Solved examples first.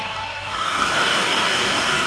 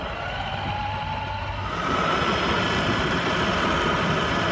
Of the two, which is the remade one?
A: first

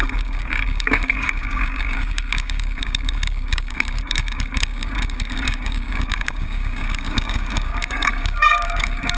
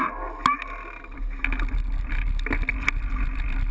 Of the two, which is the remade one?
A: first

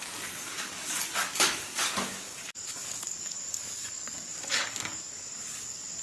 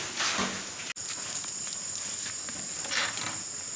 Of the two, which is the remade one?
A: first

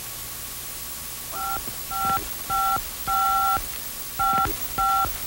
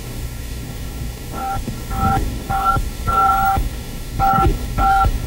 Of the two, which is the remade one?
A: second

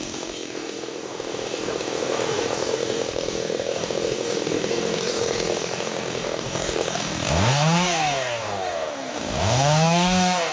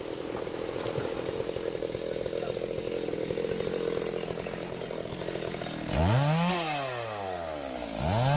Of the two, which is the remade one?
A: first